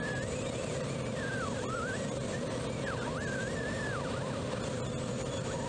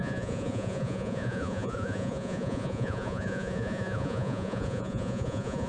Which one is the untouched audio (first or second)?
first